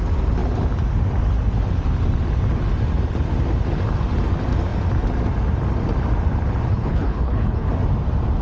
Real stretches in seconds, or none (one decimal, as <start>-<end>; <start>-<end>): 0.0-6.7; 7.7-8.4